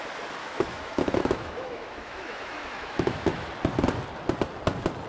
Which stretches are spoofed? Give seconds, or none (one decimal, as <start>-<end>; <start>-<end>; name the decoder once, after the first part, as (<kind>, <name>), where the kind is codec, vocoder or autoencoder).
0.4-3.5 (autoencoder, DAC-VAE)